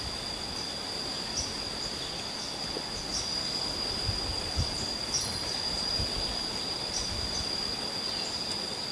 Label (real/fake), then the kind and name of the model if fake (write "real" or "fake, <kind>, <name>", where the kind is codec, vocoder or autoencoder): real